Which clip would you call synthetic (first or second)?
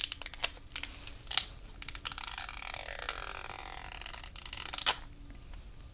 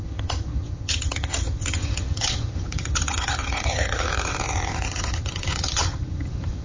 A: second